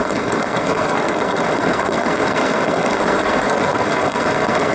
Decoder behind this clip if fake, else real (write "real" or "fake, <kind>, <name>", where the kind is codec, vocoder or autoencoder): fake, codec, SNAC